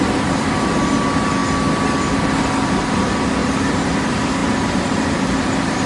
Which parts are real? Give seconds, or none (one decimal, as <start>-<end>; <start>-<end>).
0.0-3.4; 4.0-4.4